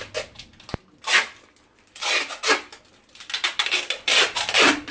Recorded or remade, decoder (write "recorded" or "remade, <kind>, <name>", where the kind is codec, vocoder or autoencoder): recorded